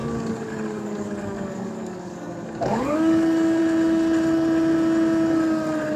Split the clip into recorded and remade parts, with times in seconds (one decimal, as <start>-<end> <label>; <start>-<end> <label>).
0.0-3.6 remade; 3.6-6.0 recorded